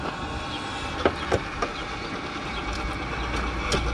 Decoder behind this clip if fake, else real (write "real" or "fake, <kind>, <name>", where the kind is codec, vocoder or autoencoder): real